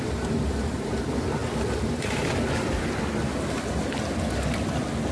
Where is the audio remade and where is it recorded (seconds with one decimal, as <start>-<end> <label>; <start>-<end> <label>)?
0.0-5.1 recorded